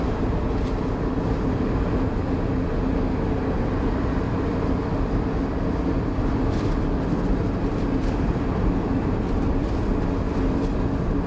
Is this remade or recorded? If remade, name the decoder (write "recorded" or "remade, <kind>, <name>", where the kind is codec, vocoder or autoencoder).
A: recorded